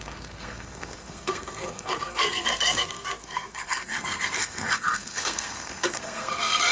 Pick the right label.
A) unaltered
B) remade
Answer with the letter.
B